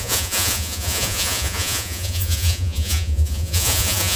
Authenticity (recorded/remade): remade